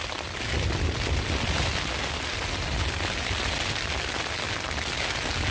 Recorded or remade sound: recorded